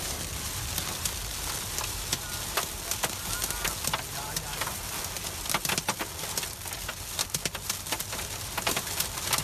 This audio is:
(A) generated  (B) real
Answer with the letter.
B